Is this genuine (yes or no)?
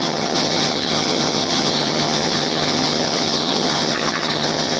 no